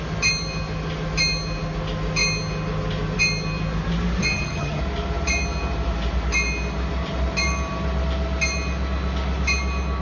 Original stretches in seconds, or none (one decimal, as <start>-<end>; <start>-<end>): 0.0-4.2; 4.8-10.0